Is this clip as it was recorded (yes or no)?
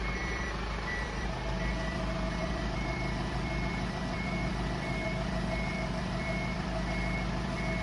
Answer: no